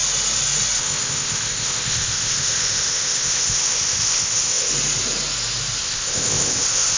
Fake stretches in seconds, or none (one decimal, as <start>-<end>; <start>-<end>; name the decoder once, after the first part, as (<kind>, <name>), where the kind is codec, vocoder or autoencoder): 0.8-4.7 (codec, ZipCodec); 5.8-7.0